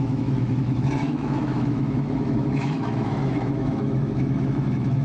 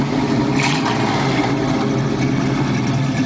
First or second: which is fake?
first